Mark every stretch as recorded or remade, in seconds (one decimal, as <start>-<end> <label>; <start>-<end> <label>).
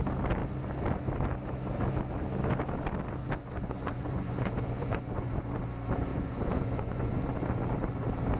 0.0-3.4 recorded; 3.4-5.6 remade; 5.6-6.1 recorded; 6.1-7.3 remade; 7.3-8.4 recorded